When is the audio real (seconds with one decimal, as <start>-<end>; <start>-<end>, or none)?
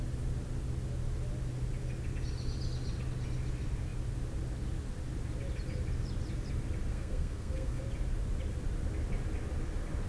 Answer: 0.0-6.9; 7.8-10.1